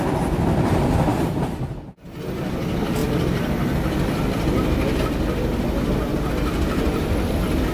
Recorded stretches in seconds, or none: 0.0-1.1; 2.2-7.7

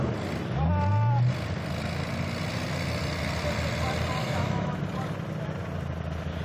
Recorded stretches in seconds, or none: 0.0-4.2; 4.8-6.4

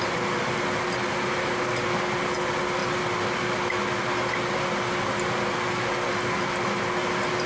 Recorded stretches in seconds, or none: 0.0-7.5

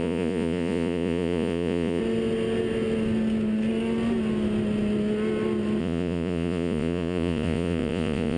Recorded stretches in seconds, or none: 2.0-5.8

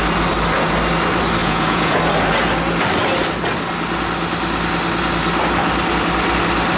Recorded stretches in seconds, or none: 0.0-1.4; 2.0-6.8

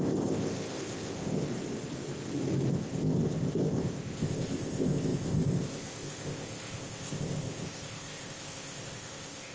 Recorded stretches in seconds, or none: 1.5-2.7